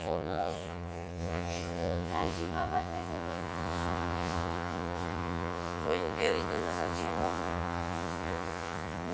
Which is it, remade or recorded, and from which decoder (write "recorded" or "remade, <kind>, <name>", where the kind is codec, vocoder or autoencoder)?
remade, vocoder, Vocos